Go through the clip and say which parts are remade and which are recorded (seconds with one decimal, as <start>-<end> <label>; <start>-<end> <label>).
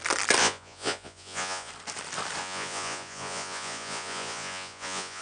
0.0-0.4 recorded; 0.4-1.7 remade; 1.7-2.4 recorded; 2.4-5.2 remade